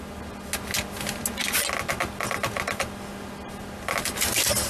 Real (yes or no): yes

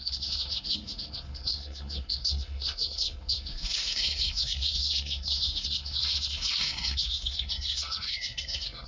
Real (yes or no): no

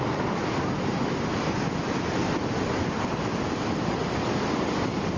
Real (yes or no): yes